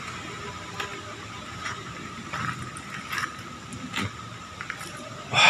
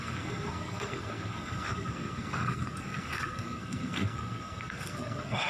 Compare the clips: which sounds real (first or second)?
first